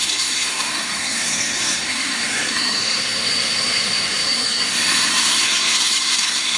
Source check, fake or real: fake